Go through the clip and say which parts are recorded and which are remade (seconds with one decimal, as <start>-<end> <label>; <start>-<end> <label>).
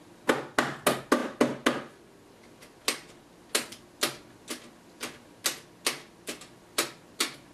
0.0-7.5 recorded